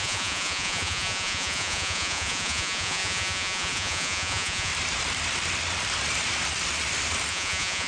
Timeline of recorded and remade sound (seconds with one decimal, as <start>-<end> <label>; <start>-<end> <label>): 0.0-4.7 remade; 4.7-7.3 recorded; 7.3-7.9 remade